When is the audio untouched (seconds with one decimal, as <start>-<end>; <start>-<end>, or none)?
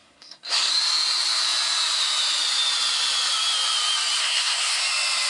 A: 0.7-4.2; 4.8-5.3